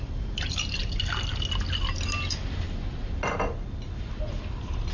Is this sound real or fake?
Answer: real